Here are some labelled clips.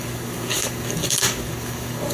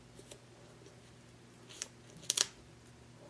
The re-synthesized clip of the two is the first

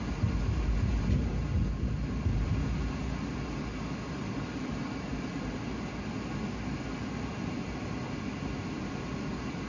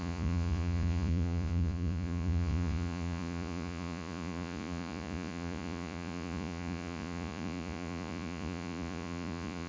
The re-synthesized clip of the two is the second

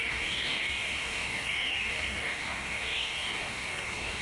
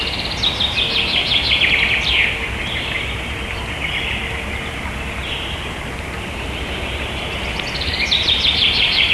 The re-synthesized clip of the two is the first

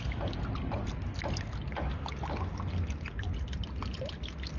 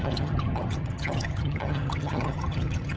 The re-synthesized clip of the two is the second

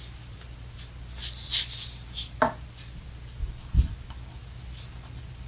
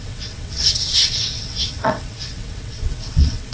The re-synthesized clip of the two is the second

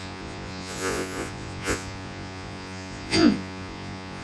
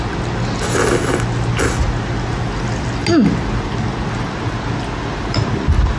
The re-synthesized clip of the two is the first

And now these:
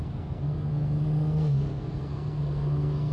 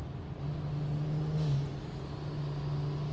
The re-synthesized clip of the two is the first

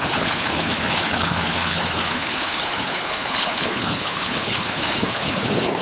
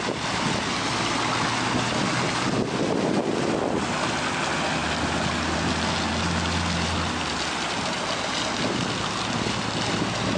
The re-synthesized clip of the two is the first